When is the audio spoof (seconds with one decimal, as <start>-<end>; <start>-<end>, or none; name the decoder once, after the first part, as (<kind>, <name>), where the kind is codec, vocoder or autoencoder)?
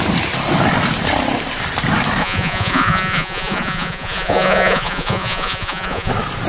2.2-6.1 (vocoder, Vocos)